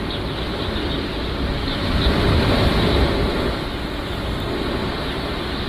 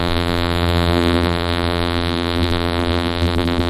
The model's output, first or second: second